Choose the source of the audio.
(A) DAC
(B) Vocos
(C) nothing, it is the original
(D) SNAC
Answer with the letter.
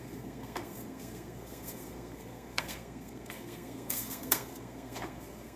D